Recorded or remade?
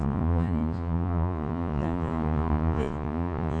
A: remade